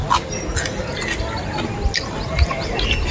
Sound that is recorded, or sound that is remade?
recorded